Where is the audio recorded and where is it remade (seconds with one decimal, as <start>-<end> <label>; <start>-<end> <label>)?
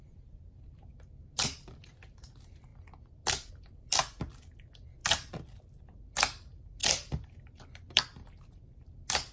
0.0-5.0 recorded; 5.0-5.8 remade; 5.8-9.3 recorded